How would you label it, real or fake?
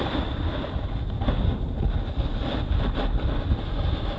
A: real